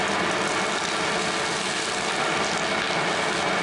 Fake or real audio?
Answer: real